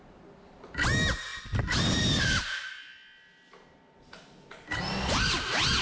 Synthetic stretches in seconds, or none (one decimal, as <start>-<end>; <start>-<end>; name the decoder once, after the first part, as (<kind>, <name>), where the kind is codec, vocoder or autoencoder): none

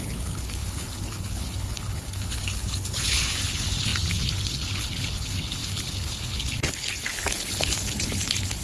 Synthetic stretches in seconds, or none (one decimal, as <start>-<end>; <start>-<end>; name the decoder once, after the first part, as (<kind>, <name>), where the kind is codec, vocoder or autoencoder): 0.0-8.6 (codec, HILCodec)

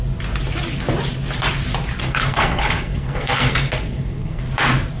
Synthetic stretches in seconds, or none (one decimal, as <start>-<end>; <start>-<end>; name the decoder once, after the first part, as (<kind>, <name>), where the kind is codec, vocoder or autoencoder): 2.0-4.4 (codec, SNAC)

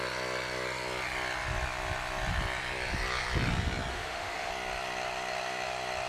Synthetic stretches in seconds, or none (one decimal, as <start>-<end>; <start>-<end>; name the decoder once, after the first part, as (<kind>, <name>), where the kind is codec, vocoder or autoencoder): 3.9-4.5 (autoencoder, DAC-VAE)

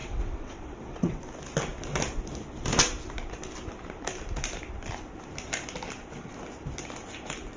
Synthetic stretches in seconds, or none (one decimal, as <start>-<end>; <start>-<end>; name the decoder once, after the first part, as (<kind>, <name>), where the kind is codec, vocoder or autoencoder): 0.0-1.2 (vocoder, WaveNeXt)